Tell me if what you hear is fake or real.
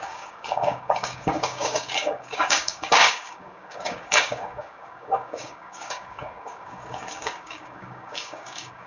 fake